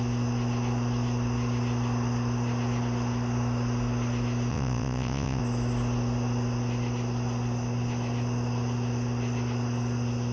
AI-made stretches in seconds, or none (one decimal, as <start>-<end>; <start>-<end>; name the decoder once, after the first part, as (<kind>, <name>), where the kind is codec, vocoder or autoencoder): 4.5-5.4 (vocoder, Vocos)